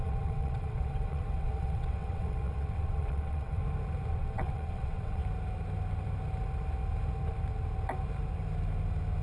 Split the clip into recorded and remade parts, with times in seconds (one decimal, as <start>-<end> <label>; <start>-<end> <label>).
0.0-3.6 remade; 3.6-4.1 recorded; 4.1-5.2 remade; 5.2-9.2 recorded